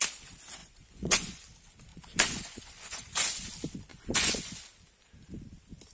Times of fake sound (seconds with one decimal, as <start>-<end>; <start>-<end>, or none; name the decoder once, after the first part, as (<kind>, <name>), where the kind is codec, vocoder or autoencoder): 0.6-1.4 (vocoder, Vocos); 1.9-3.4; 3.9-4.6

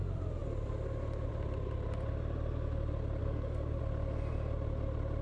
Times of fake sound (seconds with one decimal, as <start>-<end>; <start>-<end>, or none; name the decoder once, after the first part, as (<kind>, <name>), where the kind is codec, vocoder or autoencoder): 3.2-3.8 (codec, DAC)

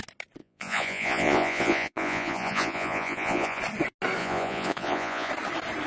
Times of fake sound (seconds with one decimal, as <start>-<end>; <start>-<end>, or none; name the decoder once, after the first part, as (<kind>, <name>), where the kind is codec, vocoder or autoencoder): 0.4-3.6 (vocoder, Vocos); 4.2-5.3

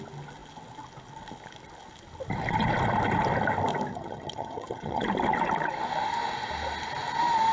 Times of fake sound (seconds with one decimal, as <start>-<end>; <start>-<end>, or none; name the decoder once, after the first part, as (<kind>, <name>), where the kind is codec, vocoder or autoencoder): 3.9-5.0 (vocoder, HiFi-GAN)

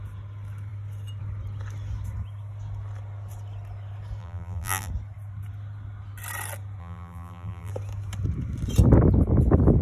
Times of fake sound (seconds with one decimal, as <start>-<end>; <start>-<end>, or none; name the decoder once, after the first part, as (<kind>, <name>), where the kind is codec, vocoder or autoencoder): 4.2-4.9 (vocoder, BigVGAN v2); 6.8-7.7